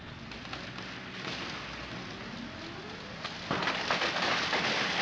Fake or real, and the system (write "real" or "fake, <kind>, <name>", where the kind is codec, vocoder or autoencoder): real